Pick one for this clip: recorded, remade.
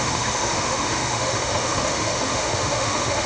remade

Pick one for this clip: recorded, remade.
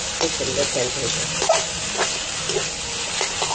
recorded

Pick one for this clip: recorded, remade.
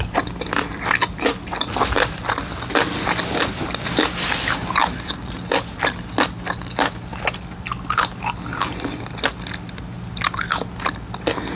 recorded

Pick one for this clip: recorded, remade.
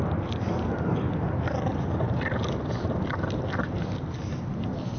recorded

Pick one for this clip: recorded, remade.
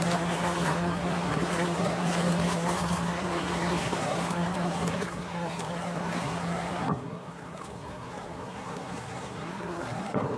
remade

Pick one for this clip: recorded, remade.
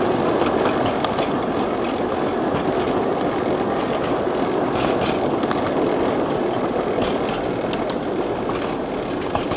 recorded